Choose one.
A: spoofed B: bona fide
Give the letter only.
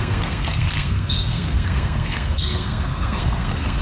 A